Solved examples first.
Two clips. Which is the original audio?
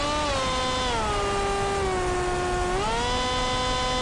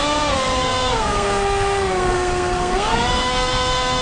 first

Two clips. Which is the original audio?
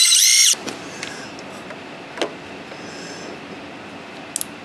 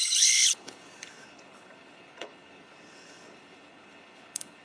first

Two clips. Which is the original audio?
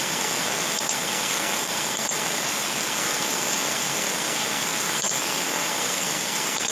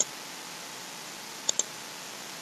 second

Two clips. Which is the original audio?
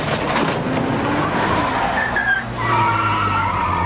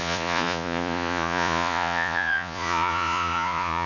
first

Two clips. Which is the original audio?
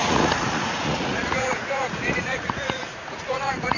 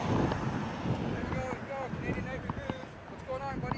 second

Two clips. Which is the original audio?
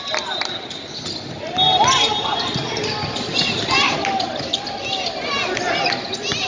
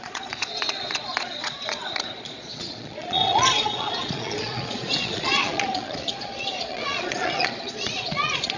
first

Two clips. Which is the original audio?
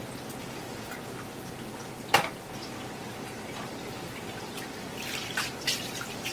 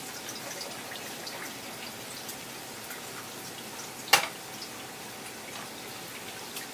second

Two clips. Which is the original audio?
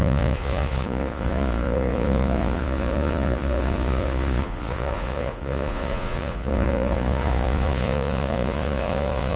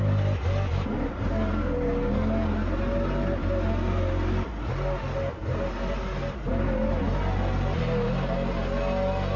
second